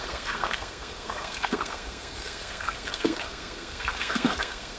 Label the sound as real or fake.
fake